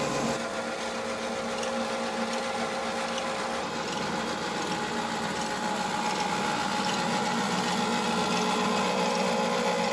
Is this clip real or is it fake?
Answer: real